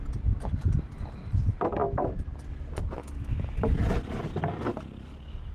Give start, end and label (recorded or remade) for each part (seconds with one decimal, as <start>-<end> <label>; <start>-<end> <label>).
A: 0.0-3.0 recorded; 3.0-3.7 remade; 3.7-5.5 recorded